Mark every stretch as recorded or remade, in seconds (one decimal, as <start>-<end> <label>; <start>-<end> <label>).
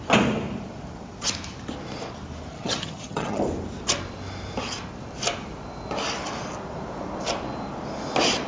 0.0-2.5 recorded; 2.5-3.4 remade; 3.4-8.5 recorded